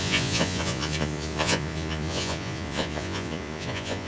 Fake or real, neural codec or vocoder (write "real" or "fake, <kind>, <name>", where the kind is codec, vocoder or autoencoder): fake, vocoder, Vocos